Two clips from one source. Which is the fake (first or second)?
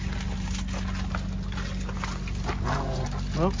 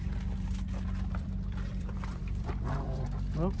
second